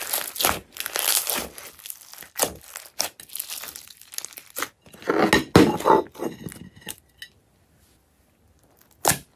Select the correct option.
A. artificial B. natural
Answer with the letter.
B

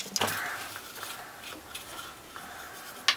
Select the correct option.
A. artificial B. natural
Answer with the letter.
B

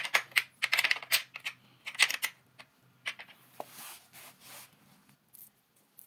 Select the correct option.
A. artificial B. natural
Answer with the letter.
B